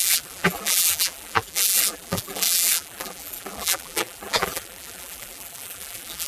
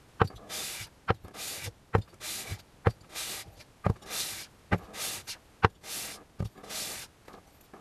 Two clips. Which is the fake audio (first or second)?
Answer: first